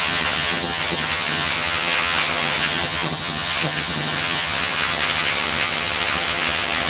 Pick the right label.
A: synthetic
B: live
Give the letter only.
A